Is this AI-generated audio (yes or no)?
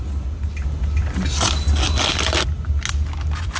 no